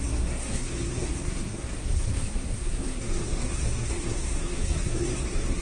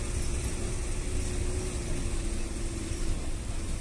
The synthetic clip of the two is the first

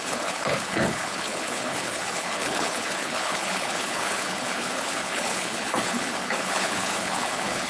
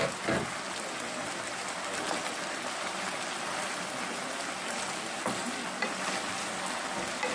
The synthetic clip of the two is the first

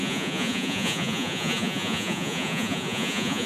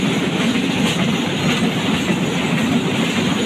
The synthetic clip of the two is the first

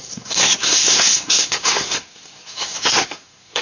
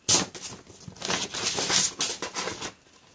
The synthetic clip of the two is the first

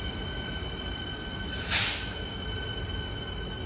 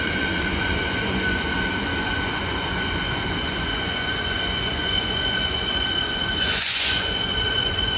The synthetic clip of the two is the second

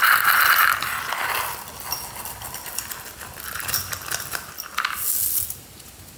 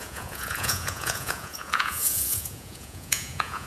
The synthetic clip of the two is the second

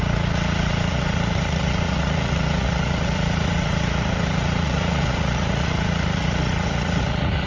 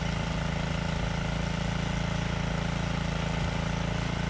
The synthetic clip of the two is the first